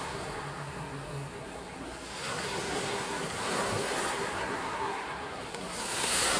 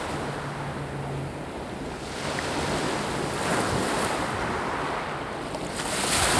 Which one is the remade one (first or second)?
first